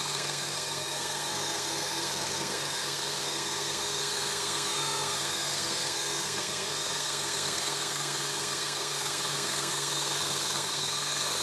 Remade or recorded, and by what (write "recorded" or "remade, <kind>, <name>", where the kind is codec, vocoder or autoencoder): remade, codec, SNAC